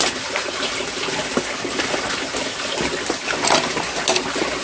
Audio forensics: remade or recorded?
recorded